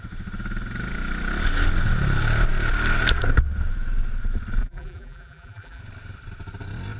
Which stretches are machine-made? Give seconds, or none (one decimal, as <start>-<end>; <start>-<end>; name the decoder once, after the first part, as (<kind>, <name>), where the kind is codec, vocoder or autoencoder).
4.6-5.8 (vocoder, BigVGAN v2)